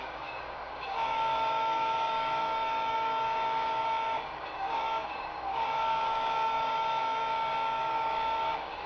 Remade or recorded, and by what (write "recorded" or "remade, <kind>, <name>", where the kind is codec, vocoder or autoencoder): remade, codec, DAC